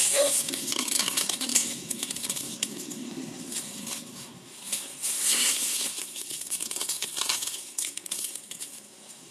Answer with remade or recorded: remade